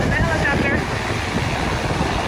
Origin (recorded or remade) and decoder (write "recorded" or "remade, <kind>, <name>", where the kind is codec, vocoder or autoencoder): recorded